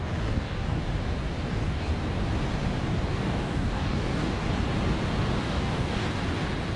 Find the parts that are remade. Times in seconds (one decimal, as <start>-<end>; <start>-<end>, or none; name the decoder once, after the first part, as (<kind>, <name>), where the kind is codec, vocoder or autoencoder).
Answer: 0.0-0.8 (codec, DAC); 1.5-1.9; 3.1-4.4; 5.4-6.0